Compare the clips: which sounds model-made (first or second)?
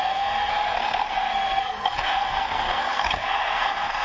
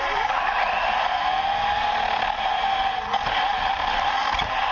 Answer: first